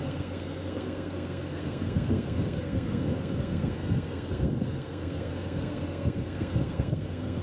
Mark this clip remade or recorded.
remade